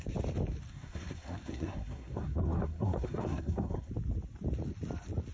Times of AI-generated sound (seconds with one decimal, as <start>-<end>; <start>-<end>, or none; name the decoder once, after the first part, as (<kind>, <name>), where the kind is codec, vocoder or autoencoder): 0.7-3.9 (codec, SNAC)